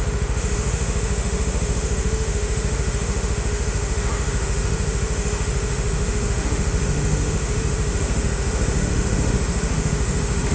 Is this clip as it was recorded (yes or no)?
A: no